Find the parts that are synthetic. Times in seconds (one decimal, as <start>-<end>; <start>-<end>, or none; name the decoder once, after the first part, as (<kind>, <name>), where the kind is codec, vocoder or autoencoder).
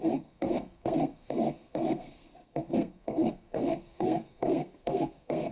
0.0-5.5 (codec, SNAC)